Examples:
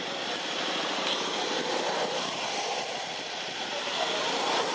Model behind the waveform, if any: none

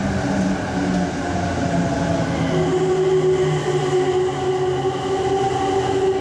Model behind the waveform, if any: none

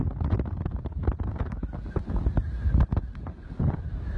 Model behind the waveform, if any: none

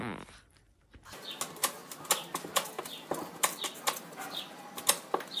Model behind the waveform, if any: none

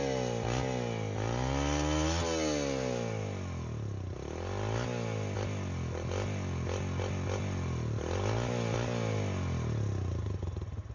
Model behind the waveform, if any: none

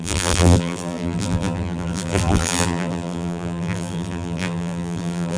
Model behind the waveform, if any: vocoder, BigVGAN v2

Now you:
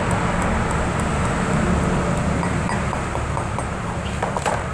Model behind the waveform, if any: none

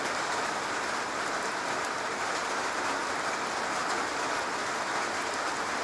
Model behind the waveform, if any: none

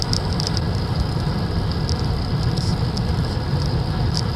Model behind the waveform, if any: vocoder, BigVGAN v2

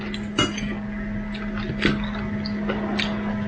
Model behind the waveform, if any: none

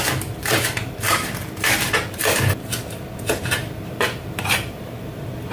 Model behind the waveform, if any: vocoder, BigVGAN v2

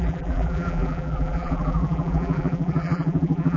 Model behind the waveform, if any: vocoder, BigVGAN v2